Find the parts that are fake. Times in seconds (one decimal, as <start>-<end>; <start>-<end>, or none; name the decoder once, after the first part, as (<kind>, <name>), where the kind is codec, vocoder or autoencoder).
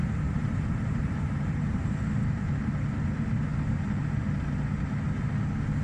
0.0-1.8 (vocoder, BigVGAN v2)